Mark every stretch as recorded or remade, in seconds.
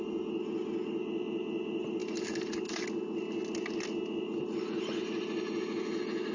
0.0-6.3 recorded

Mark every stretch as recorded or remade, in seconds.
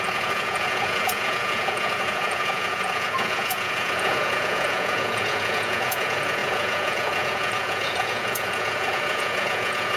0.0-10.0 remade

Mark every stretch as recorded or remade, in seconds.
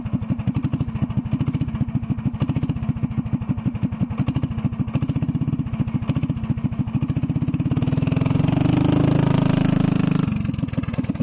0.0-11.2 recorded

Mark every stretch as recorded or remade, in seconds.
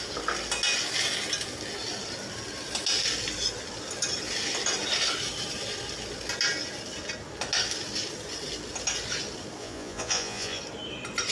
0.0-9.6 recorded; 9.6-10.6 remade; 10.6-11.3 recorded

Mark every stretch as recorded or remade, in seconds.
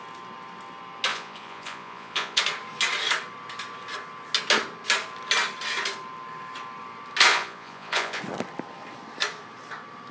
0.0-1.1 recorded; 1.1-2.4 remade; 2.4-7.3 recorded; 7.3-8.2 remade; 8.2-10.1 recorded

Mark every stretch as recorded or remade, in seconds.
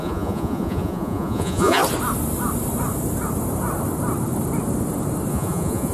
0.0-1.8 remade; 1.8-5.3 recorded; 5.3-5.9 remade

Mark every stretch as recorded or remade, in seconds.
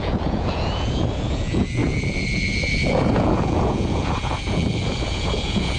0.0-5.8 remade